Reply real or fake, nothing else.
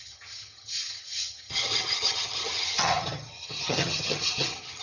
fake